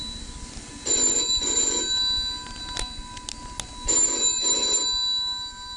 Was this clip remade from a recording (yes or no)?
no